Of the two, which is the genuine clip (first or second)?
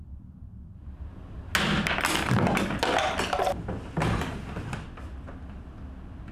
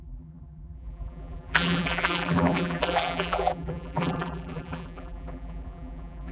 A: first